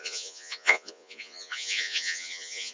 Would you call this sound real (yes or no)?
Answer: no